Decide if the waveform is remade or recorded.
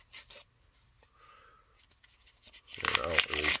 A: recorded